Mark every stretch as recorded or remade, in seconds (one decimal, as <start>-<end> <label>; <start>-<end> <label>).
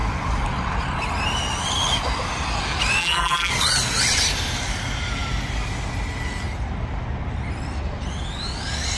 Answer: 0.0-3.0 recorded; 3.0-3.5 remade; 3.5-9.0 recorded